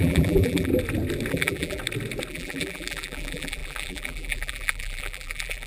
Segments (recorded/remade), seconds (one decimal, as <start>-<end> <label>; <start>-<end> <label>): 0.0-0.7 remade; 0.7-1.3 recorded; 1.3-1.8 remade; 1.8-2.3 recorded; 2.3-5.7 remade